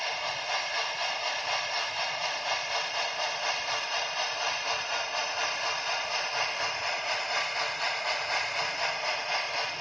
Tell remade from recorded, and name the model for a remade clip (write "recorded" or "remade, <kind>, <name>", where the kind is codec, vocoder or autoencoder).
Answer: recorded